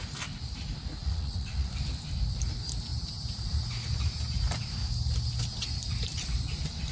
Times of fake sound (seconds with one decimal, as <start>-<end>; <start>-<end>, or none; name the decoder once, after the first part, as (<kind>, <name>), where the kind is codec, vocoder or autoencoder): 1.0-1.7 (vocoder, Vocos)